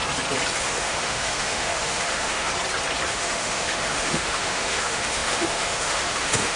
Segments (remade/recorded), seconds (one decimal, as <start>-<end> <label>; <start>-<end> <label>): 0.0-0.6 recorded; 0.6-2.5 remade; 2.5-3.1 recorded; 3.1-6.6 remade